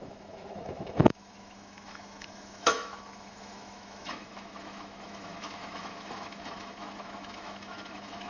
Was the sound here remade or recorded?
remade